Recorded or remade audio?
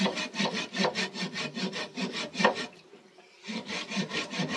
recorded